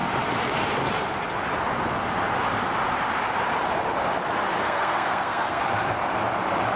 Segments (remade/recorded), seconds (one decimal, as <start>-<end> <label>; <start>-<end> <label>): 0.0-4.6 recorded; 4.6-5.6 remade; 5.6-6.8 recorded